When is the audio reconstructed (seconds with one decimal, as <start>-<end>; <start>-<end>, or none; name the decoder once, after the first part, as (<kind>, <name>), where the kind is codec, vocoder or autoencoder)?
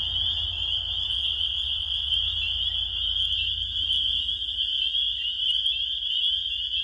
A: 1.1-2.1 (vocoder, WaveNeXt)